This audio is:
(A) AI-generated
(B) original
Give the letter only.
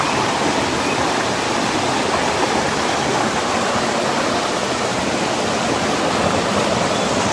B